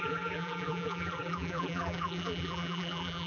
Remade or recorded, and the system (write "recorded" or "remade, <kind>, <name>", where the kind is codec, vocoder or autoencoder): remade, vocoder, BigVGAN v2